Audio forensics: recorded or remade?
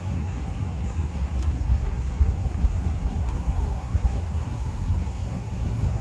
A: remade